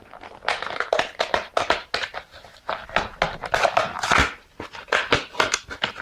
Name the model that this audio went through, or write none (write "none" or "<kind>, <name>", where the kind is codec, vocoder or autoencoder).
none